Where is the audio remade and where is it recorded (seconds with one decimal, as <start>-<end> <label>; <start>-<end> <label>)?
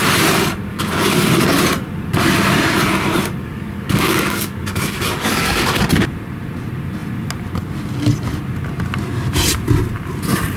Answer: 0.0-0.7 recorded; 0.7-1.3 remade; 1.3-3.4 recorded; 3.4-5.8 remade; 5.8-10.6 recorded